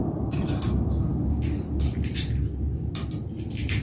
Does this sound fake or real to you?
real